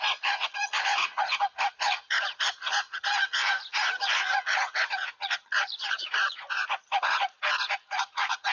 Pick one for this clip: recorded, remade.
remade